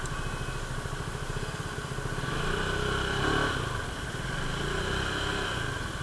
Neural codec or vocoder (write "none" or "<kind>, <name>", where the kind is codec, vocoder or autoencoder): none